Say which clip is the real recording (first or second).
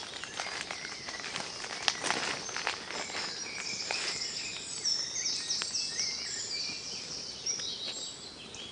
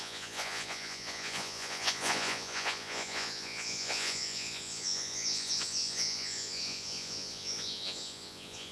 first